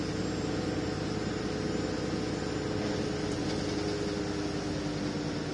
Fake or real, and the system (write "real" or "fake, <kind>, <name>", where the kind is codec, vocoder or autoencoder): real